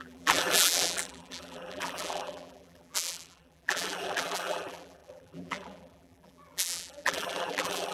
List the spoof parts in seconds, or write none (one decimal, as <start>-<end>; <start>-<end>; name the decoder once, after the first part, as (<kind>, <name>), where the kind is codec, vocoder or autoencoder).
0.0-7.9 (vocoder, BigVGAN v2)